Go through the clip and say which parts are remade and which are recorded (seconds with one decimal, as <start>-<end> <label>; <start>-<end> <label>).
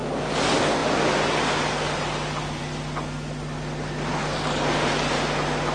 0.0-5.7 recorded